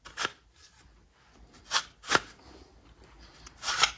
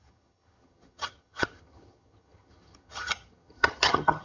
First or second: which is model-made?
second